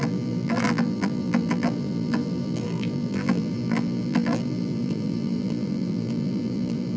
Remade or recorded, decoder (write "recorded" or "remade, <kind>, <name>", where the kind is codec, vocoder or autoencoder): remade, vocoder, BigVGAN v2